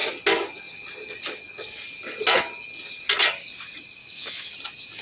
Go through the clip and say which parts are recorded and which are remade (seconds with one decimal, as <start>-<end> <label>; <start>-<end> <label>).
0.0-4.0 recorded; 4.0-4.5 remade; 4.5-5.0 recorded

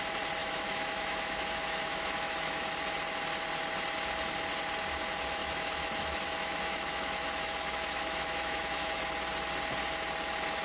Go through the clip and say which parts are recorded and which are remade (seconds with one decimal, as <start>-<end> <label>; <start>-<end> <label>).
0.0-0.4 recorded; 0.4-2.7 remade; 2.7-5.4 recorded; 5.4-9.0 remade; 9.0-10.6 recorded

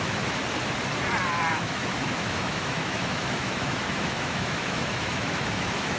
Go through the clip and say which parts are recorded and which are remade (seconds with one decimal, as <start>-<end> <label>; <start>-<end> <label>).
0.0-0.4 remade; 0.4-1.5 recorded; 1.5-6.0 remade

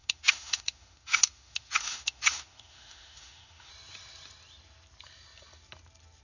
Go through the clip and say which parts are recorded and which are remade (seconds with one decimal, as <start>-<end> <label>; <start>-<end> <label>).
0.0-3.7 remade; 3.7-6.2 recorded

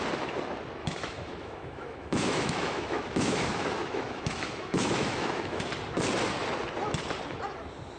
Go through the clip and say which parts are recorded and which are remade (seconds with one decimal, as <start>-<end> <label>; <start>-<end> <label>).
0.0-0.8 recorded; 0.8-5.6 remade; 5.6-8.0 recorded

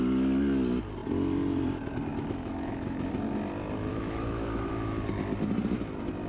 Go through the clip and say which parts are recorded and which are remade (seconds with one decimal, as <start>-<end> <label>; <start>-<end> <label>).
0.0-2.1 recorded; 2.1-3.1 remade; 3.1-3.9 recorded; 3.9-4.7 remade; 4.7-6.3 recorded

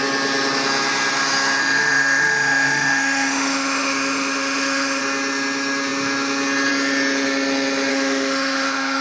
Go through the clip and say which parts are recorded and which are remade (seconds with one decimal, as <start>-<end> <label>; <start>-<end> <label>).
0.0-1.6 recorded; 1.6-5.0 remade; 5.0-7.9 recorded; 7.9-9.0 remade